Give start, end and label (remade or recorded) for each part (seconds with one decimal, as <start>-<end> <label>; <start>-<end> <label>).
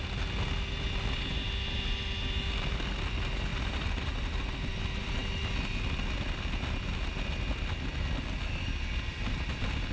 0.0-3.5 recorded; 3.5-4.4 remade; 4.4-9.9 recorded